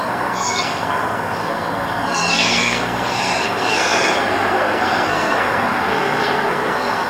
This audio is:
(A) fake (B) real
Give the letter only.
A